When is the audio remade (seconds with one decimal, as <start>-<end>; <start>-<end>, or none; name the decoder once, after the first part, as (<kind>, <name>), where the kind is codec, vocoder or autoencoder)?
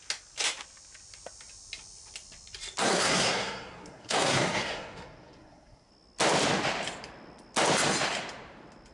2.8-5.9 (codec, SNAC)